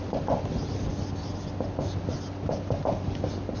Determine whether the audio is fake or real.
real